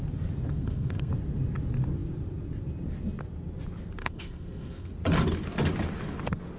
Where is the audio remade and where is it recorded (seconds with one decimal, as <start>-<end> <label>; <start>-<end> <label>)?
0.0-0.5 recorded; 0.5-1.1 remade; 1.1-4.0 recorded; 4.0-4.9 remade; 4.9-6.6 recorded